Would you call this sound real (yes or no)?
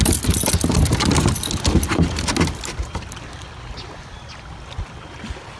yes